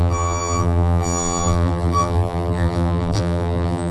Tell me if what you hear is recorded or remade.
remade